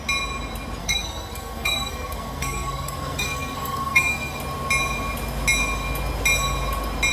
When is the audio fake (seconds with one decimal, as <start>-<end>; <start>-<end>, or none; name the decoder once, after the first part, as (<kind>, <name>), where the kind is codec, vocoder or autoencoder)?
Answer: 0.8-4.4 (codec, SNAC)